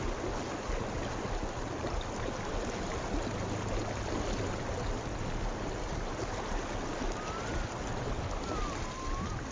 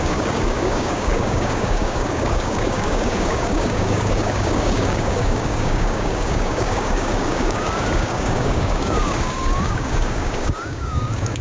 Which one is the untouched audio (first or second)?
first